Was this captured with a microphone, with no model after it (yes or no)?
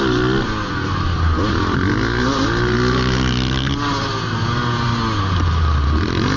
yes